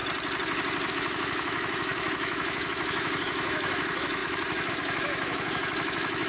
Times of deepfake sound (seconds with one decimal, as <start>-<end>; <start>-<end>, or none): 0.9-6.3